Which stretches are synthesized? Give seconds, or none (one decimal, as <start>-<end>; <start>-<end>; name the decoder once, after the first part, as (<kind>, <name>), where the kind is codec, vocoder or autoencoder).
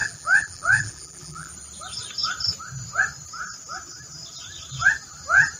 0.0-1.5 (vocoder, BigVGAN v2)